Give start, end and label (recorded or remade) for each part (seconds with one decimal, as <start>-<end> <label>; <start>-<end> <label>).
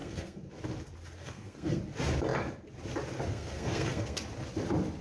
0.0-0.5 remade; 0.5-1.2 recorded; 1.2-1.8 remade; 1.8-3.3 recorded; 3.3-4.2 remade; 4.2-5.0 recorded